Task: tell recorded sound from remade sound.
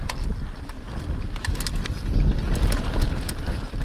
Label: recorded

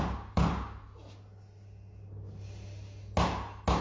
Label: recorded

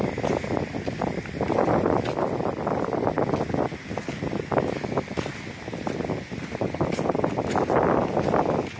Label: recorded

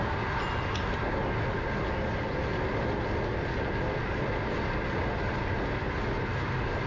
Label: recorded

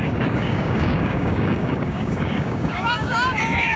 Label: remade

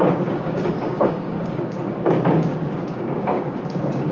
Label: remade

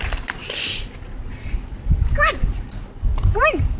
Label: recorded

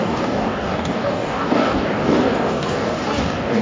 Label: remade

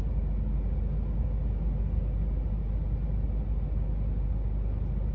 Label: recorded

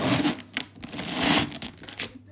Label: recorded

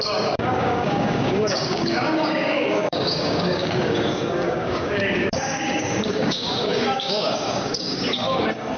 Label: remade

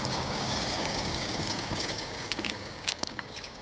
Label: remade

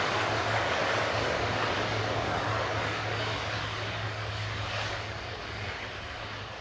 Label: remade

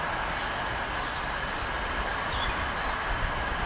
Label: recorded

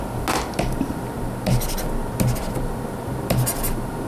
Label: recorded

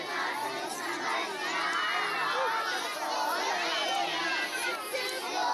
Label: recorded